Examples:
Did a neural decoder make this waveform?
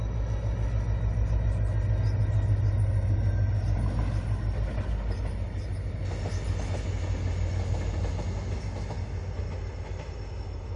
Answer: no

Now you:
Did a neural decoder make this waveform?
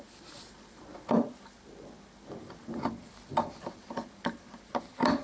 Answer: no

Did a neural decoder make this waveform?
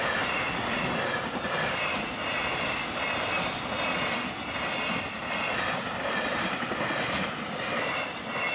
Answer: no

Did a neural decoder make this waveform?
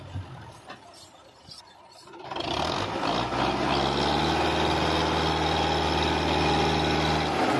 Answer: no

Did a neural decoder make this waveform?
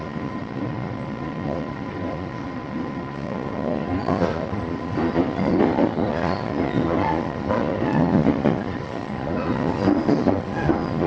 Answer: yes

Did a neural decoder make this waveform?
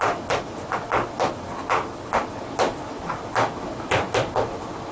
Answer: no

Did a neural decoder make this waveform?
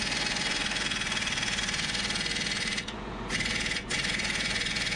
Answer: yes